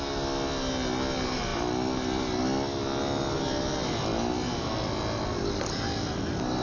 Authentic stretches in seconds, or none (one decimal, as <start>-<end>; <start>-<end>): 0.0-6.6